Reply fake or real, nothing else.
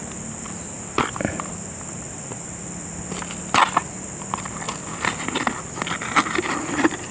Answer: real